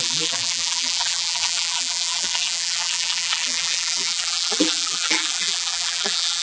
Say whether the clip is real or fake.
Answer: fake